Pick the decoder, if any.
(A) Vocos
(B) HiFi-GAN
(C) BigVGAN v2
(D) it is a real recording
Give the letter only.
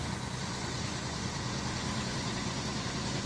A